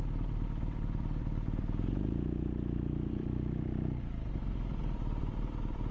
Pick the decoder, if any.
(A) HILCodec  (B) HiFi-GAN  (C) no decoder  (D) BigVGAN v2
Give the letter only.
D